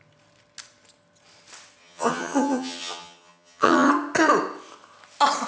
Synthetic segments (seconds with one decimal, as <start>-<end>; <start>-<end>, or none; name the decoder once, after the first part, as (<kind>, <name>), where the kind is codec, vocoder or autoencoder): 1.8-3.9 (vocoder, HiFi-GAN)